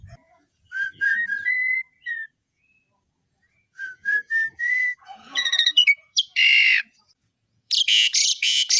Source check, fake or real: fake